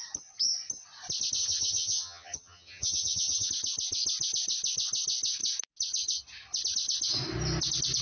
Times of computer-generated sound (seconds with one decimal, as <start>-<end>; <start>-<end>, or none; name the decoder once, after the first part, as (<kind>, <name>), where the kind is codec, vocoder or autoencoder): 1.4-3.5 (vocoder, HiFi-GAN)

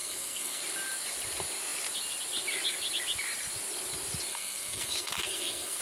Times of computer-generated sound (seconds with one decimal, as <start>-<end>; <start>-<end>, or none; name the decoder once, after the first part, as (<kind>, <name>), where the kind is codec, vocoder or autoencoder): 0.0-0.6 (codec, SNAC); 4.3-5.8

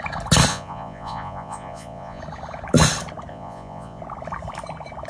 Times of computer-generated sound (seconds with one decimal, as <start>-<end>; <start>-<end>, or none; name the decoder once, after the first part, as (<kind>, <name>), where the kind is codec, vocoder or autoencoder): 0.5-2.2 (vocoder, Vocos); 3.3-4.0

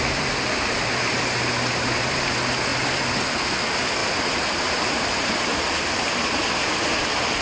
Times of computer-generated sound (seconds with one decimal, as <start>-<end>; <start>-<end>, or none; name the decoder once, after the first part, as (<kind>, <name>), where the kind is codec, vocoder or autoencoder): 1.1-2.0 (vocoder, BigVGAN v2); 4.0-6.1

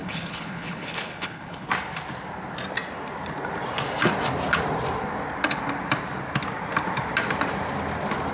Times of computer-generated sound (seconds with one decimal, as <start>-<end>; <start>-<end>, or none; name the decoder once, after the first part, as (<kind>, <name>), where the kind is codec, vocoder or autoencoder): 0.0-1.7 (codec, HILCodec)